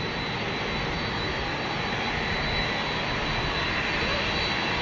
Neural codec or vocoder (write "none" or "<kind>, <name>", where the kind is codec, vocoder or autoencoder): none